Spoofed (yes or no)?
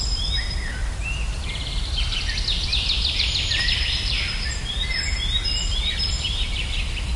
yes